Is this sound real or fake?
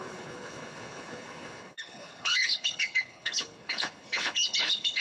fake